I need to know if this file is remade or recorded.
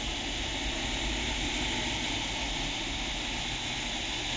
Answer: recorded